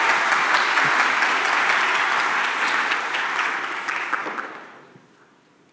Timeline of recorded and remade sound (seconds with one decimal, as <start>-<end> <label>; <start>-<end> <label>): 0.0-5.7 recorded